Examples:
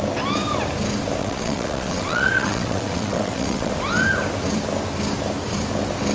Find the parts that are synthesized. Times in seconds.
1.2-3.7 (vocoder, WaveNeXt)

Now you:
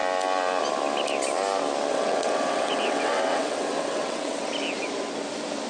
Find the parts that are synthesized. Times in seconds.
1.9-4.5 (vocoder, WaveNeXt)

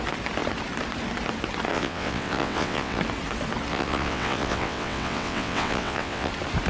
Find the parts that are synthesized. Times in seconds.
1.7-3.0 (vocoder, WaveNeXt); 3.7-6.3

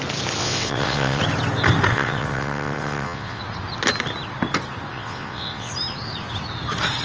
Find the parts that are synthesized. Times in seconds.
0.4-1.2 (vocoder, WaveNeXt); 1.9-3.4; 4.9-5.7

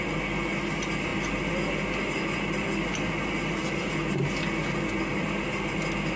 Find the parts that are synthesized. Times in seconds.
none

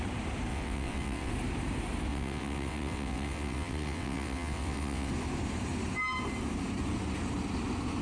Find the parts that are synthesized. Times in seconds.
0.5-1.3 (vocoder, WaveNeXt); 2.1-5.1

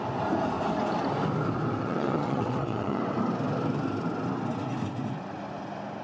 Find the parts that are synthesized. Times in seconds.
1.8-3.0 (vocoder, WaveNeXt)

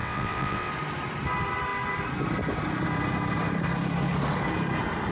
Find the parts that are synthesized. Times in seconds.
0.0-0.7 (vocoder, WaveNeXt)